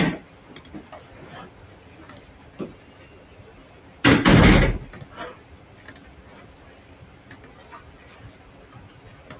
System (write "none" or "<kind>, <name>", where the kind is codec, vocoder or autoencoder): none